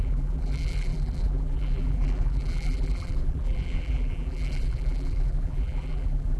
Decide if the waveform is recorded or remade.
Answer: remade